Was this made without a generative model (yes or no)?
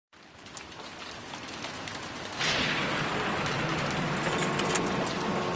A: yes